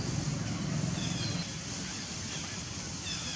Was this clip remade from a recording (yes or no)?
no